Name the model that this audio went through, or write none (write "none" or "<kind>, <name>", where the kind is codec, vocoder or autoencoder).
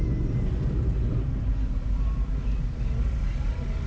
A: none